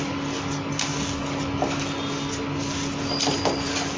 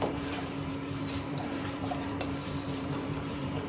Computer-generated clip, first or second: second